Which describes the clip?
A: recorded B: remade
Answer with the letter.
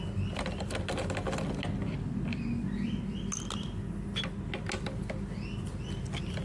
A